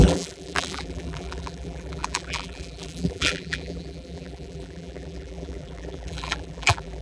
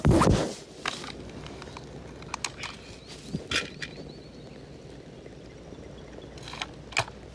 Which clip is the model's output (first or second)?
first